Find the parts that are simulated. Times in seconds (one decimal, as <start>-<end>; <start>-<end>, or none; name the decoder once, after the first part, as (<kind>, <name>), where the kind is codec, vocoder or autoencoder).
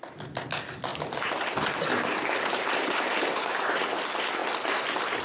0.9-4.0 (vocoder, BigVGAN v2)